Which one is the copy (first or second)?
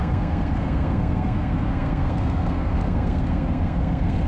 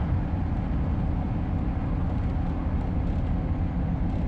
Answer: first